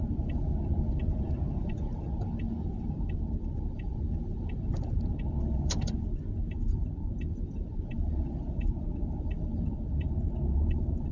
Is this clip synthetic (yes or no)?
yes